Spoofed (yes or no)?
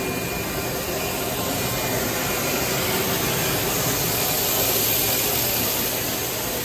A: no